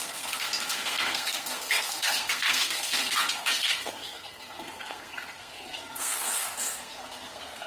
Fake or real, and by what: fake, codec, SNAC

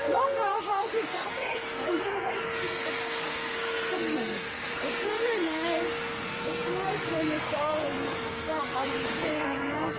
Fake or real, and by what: fake, codec, SNAC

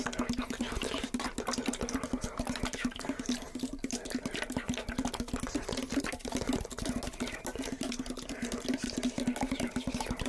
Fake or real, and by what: real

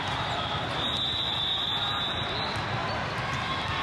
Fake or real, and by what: real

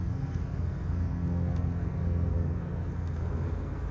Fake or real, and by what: fake, codec, SNAC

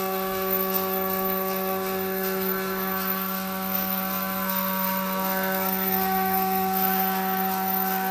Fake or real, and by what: fake, codec, SNAC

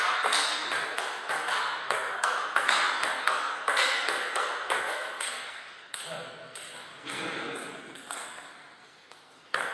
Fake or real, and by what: fake, codec, SNAC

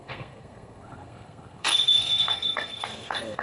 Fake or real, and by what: fake, codec, SNAC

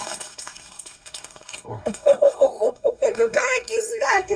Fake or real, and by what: fake, codec, SNAC